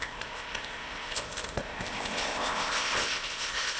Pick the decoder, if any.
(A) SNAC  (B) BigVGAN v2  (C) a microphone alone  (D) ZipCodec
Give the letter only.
D